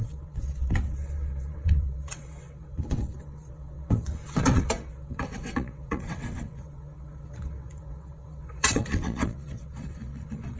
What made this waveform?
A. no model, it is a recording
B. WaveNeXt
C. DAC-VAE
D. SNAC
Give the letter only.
B